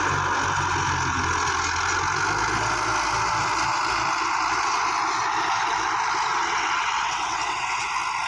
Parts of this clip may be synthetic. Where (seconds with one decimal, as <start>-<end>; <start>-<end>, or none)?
6.3-7.9